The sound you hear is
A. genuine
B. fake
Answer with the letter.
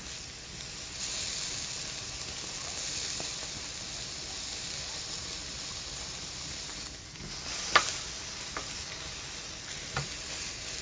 A